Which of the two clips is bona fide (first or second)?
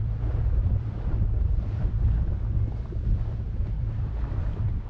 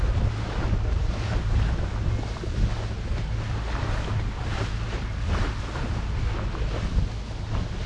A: second